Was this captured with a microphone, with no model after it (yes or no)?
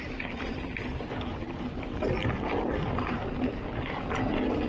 yes